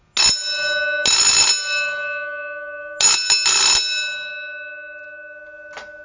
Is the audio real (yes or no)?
yes